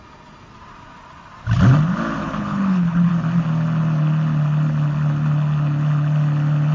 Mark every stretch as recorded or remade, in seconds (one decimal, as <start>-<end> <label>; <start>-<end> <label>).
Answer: 0.0-2.2 recorded; 2.2-3.1 remade; 3.1-6.7 recorded